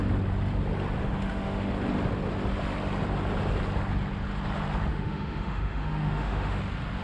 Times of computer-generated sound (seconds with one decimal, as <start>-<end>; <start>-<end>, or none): 1.0-1.7; 4.9-6.6